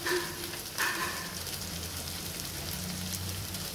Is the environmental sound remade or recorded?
remade